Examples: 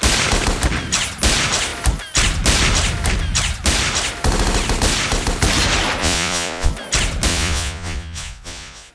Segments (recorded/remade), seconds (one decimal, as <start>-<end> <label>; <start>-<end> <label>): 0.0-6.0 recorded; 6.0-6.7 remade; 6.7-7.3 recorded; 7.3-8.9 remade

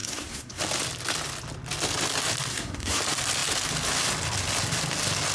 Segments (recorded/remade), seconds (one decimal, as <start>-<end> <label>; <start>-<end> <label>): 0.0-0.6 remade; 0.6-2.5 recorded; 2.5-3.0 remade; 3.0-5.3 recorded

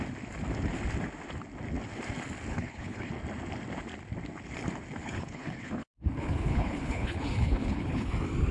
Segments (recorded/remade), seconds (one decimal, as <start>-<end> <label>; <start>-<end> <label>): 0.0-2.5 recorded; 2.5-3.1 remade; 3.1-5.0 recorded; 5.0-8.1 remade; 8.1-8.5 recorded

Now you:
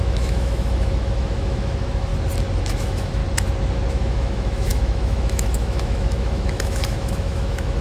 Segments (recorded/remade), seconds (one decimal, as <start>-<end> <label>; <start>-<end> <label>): 0.0-2.1 remade; 2.1-2.7 recorded; 2.7-3.2 remade; 3.2-3.9 recorded; 3.9-7.8 remade

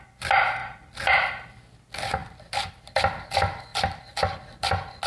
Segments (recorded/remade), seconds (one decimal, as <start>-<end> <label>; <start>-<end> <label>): 0.0-0.6 recorded; 0.6-1.3 remade; 1.3-2.2 recorded; 2.2-3.0 remade; 3.0-3.7 recorded; 3.7-4.2 remade; 4.2-5.1 recorded

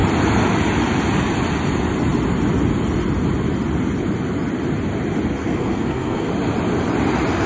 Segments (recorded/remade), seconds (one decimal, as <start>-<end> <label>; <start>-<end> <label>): 0.0-5.4 recorded; 5.4-6.3 remade; 6.3-7.5 recorded